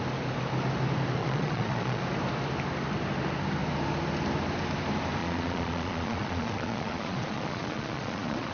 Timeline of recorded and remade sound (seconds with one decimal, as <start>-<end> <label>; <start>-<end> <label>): 0.0-1.2 recorded; 1.2-2.0 remade; 2.0-5.2 recorded; 5.2-8.5 remade